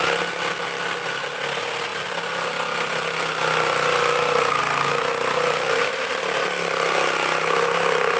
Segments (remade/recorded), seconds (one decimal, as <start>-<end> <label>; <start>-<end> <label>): 0.0-8.2 recorded